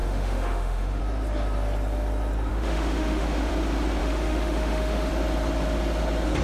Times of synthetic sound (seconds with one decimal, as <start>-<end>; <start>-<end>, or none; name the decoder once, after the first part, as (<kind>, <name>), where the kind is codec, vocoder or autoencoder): 0.0-1.0 (autoencoder, DAC-VAE); 2.5-3.5; 4.0-5.1